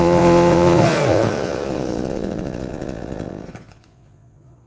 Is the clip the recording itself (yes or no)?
no